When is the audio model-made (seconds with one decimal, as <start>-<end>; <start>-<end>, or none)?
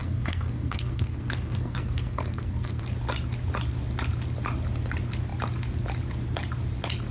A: 0.0-2.8